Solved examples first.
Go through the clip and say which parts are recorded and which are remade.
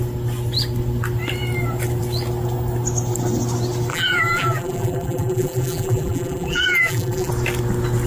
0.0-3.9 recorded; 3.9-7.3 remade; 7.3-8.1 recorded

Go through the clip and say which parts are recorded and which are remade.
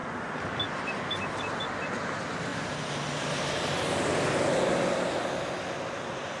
0.0-6.4 recorded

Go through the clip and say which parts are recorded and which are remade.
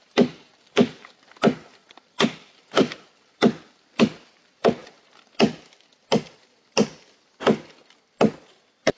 0.0-4.8 remade; 4.8-8.5 recorded; 8.5-9.0 remade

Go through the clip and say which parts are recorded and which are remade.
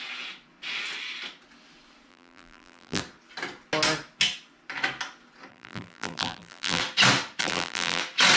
0.0-2.1 recorded; 2.1-3.0 remade; 3.0-5.5 recorded; 5.5-6.8 remade; 6.8-7.4 recorded; 7.4-8.0 remade; 8.0-8.4 recorded